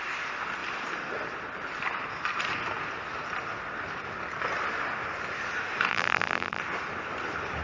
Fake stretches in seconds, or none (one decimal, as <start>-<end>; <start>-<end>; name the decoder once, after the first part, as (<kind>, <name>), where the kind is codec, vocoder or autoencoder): 5.9-6.6 (vocoder, BigVGAN v2)